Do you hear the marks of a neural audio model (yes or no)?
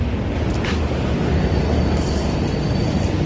no